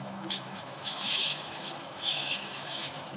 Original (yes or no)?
no